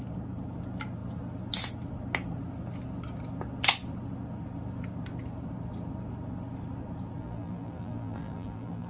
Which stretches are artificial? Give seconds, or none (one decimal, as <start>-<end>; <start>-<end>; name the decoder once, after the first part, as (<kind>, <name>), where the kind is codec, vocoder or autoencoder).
7.2-8.9 (vocoder, BigVGAN v2)